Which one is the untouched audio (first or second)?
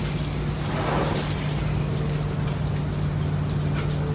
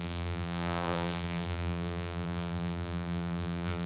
first